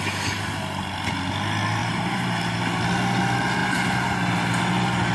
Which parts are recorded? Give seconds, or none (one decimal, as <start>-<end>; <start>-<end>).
0.0-1.8; 2.6-5.1